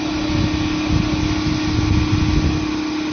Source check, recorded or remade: recorded